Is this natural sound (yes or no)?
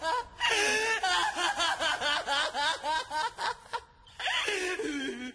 yes